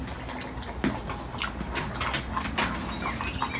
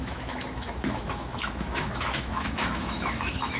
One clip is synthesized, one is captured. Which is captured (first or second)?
first